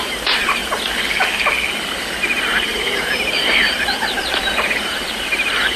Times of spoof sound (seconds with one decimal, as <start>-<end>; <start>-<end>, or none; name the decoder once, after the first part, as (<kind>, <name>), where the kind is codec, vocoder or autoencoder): 0.0-0.6 (vocoder, BigVGAN v2); 1.9-5.8